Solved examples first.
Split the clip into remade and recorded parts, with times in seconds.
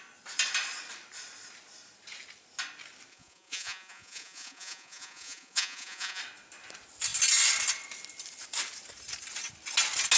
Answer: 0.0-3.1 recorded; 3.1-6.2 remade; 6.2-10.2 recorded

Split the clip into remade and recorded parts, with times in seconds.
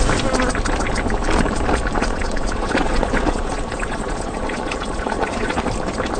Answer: 0.0-2.0 recorded; 2.0-5.7 remade; 5.7-6.2 recorded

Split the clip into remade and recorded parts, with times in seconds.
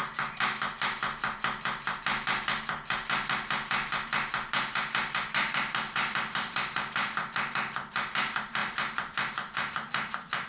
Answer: 0.0-10.5 remade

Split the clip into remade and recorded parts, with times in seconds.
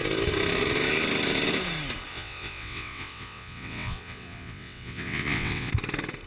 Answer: 0.0-2.1 recorded; 2.1-5.7 remade; 5.7-6.3 recorded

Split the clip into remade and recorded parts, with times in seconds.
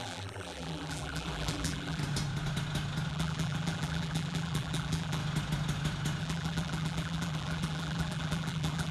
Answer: 0.0-2.0 remade; 2.0-3.1 recorded; 3.1-5.2 remade; 5.2-6.2 recorded; 6.2-8.9 remade